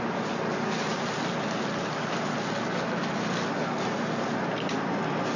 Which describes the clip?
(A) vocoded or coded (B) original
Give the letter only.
B